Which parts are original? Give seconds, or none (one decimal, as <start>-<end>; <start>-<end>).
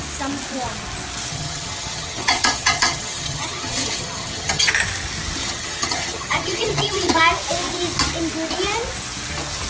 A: 0.0-1.3; 4.7-5.4; 7.2-9.7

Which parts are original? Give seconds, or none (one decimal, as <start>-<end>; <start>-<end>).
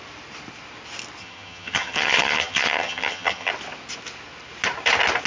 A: 0.0-1.2; 3.5-5.3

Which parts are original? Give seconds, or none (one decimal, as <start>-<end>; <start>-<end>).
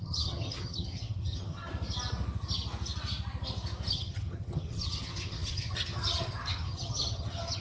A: 1.7-3.9